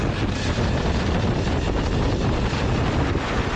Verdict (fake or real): real